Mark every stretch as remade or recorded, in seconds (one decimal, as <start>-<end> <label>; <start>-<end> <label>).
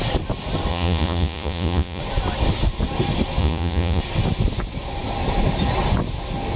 0.0-0.7 recorded; 0.7-2.0 remade; 2.0-3.4 recorded; 3.4-4.0 remade; 4.0-6.6 recorded